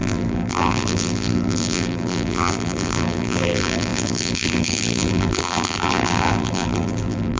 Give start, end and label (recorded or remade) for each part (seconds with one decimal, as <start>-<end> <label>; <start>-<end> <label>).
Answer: 0.0-7.4 remade